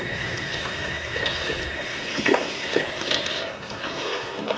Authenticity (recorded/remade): remade